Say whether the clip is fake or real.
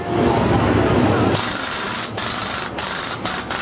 real